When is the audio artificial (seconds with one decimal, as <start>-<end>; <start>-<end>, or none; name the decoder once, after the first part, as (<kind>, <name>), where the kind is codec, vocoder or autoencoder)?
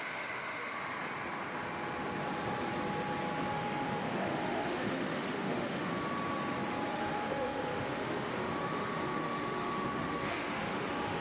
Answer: 0.0-0.8 (autoencoder, DAC-VAE); 3.5-5.9; 6.9-11.2